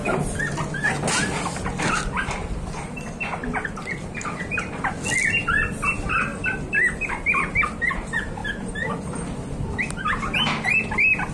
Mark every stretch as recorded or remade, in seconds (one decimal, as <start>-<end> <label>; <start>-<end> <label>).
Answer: 0.0-11.3 recorded